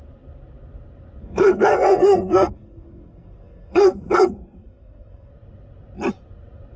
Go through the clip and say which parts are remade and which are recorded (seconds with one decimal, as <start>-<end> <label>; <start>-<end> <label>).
0.0-1.2 recorded; 1.2-5.3 remade; 5.3-6.8 recorded